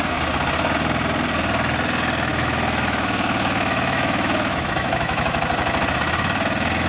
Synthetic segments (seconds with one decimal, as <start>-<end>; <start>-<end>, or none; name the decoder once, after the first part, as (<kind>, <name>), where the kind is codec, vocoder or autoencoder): 2.3-5.4 (autoencoder, DAC-VAE)